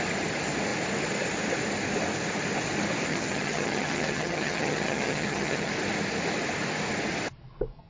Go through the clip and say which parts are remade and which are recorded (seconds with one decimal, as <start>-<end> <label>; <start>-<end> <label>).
0.0-3.1 recorded; 3.1-5.7 remade; 5.7-7.9 recorded